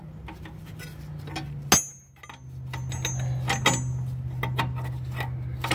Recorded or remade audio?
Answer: recorded